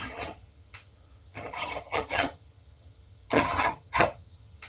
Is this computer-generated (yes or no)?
yes